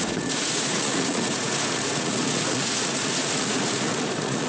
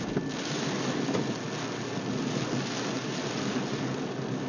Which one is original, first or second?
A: second